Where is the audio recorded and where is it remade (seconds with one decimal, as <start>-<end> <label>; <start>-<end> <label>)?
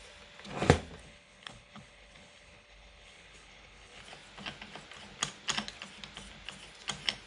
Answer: 0.0-1.0 recorded; 1.0-4.0 remade; 4.0-7.3 recorded